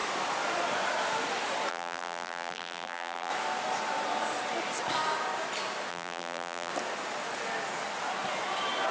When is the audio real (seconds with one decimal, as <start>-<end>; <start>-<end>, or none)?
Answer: 0.0-1.7; 3.3-5.9; 6.7-8.9